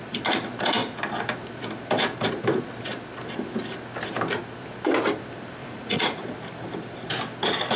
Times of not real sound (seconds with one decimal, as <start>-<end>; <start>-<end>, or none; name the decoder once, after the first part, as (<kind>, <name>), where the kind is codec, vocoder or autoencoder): 5.6-6.2 (vocoder, Vocos)